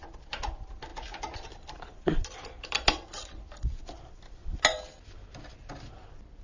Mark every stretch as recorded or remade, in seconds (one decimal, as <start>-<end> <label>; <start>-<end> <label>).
0.0-0.9 recorded; 0.9-4.0 remade; 4.0-6.4 recorded